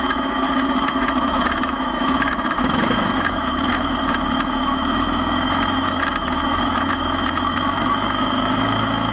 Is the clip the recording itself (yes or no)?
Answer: no